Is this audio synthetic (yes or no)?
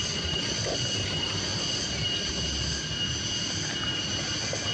no